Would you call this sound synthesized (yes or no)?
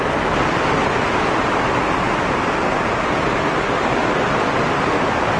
no